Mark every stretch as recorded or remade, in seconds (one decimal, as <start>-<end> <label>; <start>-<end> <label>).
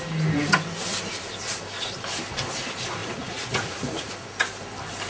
0.0-3.0 recorded; 3.0-4.1 remade; 4.1-5.1 recorded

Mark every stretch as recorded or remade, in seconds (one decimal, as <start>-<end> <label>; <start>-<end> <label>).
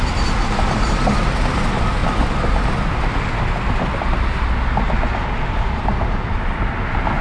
0.0-7.2 recorded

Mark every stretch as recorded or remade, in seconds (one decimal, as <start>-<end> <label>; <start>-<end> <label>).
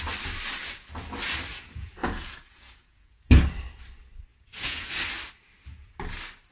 0.0-1.5 recorded; 1.5-3.4 remade; 3.4-4.3 recorded; 4.3-4.9 remade; 4.9-6.5 recorded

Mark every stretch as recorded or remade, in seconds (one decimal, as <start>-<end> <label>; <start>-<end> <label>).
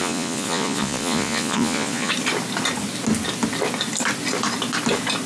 0.0-2.1 remade; 2.1-5.3 recorded